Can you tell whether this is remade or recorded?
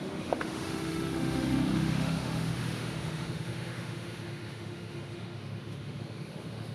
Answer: remade